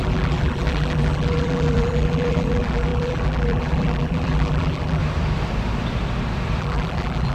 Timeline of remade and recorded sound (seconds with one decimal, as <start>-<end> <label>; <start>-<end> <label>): 0.0-5.0 remade; 5.0-6.6 recorded; 6.6-7.3 remade